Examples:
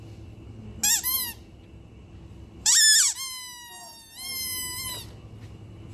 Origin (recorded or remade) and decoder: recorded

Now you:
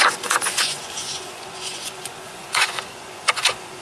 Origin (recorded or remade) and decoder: remade, vocoder, Vocos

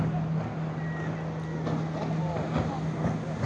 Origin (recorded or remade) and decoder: recorded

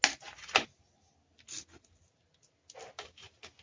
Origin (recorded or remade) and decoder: recorded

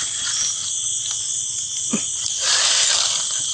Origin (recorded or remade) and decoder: recorded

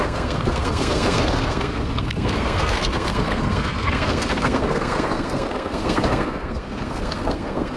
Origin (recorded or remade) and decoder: remade, codec, SNAC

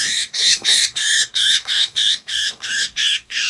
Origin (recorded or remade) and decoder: remade, codec, DAC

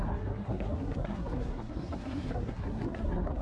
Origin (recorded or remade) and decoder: remade, codec, SNAC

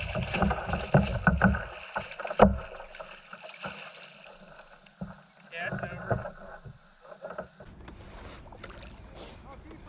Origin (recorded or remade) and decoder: recorded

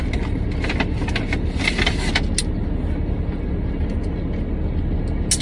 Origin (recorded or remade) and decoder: recorded